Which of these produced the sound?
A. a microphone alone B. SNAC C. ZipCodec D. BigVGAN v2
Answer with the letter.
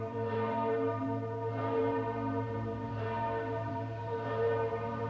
D